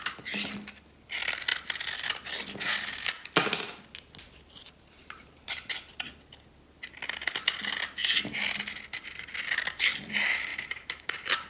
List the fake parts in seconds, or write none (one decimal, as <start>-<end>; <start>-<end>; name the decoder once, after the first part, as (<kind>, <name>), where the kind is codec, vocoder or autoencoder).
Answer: 5.0-5.5 (vocoder, BigVGAN v2); 10.5-11.5